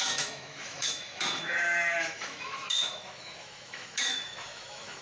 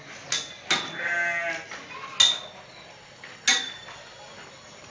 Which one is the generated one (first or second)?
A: first